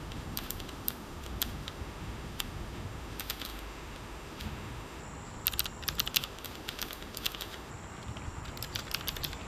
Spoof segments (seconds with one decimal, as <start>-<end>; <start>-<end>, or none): 0.0-5.0; 6.1-7.7

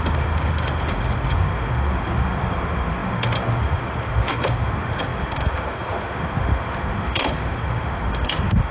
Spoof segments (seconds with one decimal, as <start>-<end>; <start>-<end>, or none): 0.0-8.7

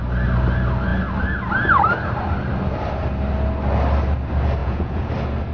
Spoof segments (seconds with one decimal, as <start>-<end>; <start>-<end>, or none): 4.6-5.1

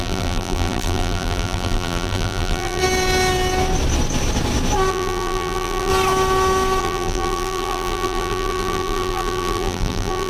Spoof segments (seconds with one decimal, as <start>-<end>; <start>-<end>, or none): 0.0-2.8; 4.9-5.9; 6.8-10.3

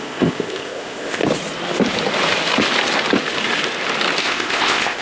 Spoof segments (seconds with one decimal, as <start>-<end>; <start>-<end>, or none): 0.0-1.2; 4.2-5.0

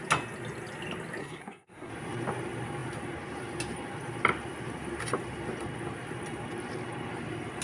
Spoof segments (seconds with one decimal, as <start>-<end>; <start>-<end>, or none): 1.2-1.9